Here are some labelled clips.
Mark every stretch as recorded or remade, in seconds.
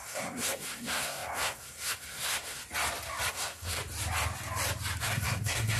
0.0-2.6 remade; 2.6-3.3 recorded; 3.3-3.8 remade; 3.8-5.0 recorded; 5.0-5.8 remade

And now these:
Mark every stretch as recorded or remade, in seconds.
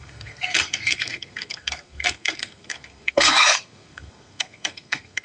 0.0-5.2 remade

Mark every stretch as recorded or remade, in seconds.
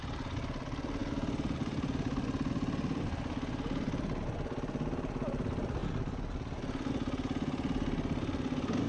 0.0-8.9 recorded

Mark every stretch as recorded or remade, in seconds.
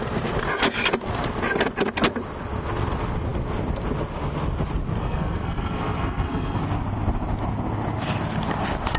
0.0-5.0 recorded; 5.0-6.6 remade; 6.6-9.0 recorded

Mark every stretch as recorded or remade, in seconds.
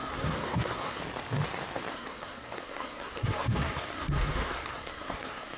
0.0-1.0 remade; 1.0-1.9 recorded; 1.9-5.6 remade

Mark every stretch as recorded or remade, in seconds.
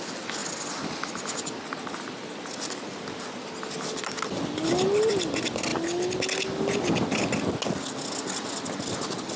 0.0-9.4 recorded